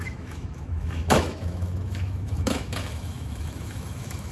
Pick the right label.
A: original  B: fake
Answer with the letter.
B